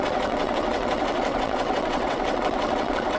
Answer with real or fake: fake